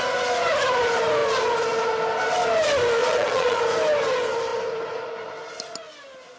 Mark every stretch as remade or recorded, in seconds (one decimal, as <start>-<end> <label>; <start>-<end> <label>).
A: 0.0-3.0 recorded; 3.0-3.6 remade; 3.6-6.4 recorded